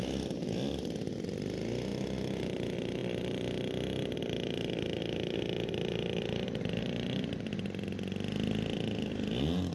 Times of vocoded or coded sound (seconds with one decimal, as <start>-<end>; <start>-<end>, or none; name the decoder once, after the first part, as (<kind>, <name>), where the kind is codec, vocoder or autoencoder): none